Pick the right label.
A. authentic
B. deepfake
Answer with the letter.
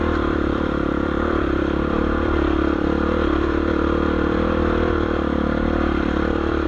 B